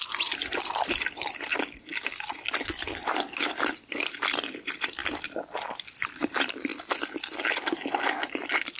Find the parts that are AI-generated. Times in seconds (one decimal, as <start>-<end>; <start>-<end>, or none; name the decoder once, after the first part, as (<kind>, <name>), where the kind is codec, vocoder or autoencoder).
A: 0.0-5.0 (vocoder, BigVGAN v2); 6.0-6.7; 8.1-8.8